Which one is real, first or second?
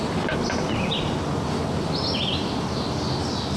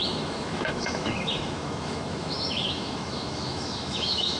first